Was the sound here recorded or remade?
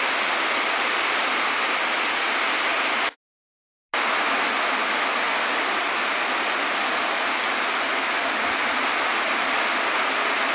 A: recorded